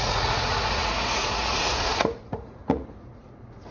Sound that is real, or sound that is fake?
fake